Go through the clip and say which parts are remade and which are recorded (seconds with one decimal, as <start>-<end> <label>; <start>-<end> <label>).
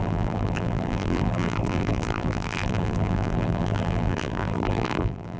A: 0.0-5.4 remade